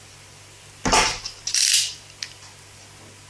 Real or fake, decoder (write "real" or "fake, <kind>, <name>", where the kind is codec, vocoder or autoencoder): real